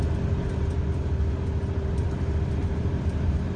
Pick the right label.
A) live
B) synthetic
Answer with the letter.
A